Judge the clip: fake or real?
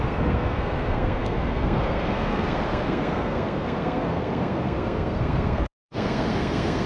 fake